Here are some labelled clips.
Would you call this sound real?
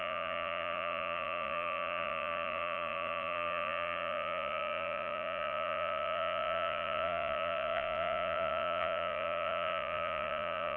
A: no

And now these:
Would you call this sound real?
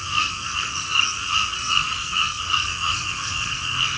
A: no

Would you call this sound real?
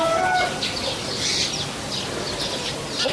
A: yes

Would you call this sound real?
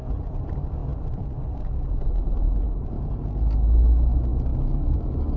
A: yes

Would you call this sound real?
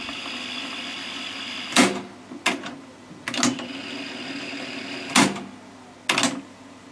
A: yes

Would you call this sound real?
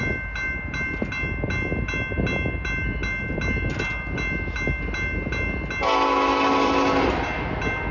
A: yes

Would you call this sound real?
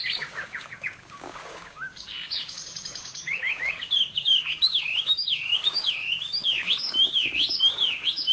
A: no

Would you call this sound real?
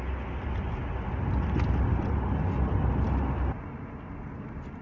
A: yes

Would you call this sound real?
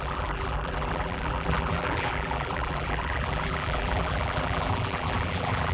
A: no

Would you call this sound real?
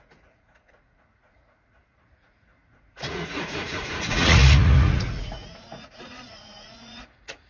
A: no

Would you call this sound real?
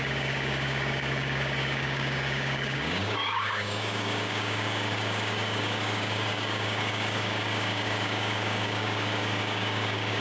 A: no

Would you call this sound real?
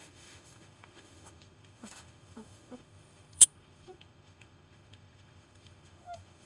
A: no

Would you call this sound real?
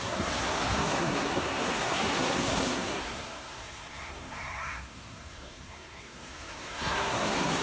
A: no